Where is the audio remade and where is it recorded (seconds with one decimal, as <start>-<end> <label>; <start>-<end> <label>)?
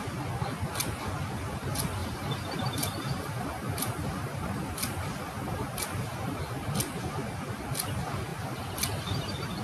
0.0-2.0 recorded; 2.0-6.7 remade; 6.7-8.3 recorded; 8.3-9.6 remade